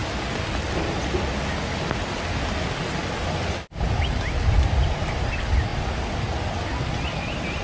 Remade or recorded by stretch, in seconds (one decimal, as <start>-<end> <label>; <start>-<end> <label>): 0.0-7.6 recorded